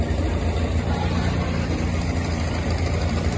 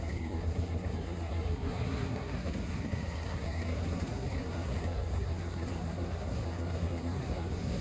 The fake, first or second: second